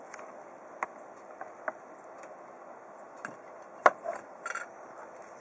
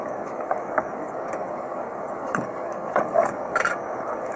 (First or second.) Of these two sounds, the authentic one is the first